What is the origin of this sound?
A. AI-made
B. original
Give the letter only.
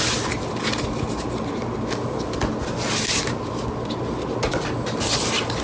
B